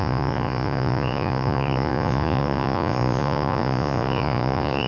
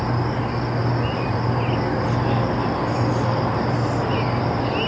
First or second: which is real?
second